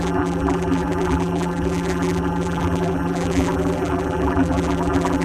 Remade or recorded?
remade